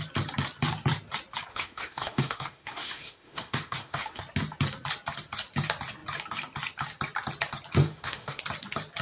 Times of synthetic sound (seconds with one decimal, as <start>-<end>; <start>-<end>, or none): 1.5-4.2; 7.8-8.4